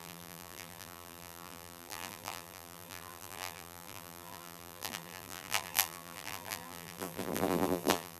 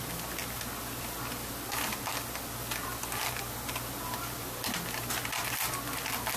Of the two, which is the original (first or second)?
second